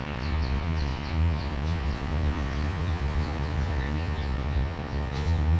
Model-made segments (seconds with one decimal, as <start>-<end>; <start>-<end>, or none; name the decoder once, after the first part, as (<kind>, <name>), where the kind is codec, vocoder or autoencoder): 0.0-5.6 (vocoder, Vocos)